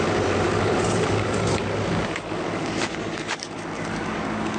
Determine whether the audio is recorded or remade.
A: remade